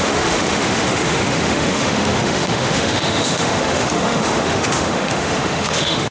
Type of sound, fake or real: fake